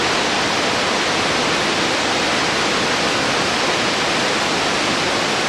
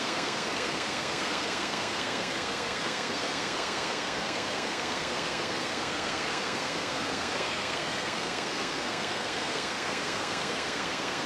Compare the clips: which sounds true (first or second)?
first